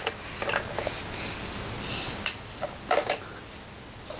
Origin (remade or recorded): recorded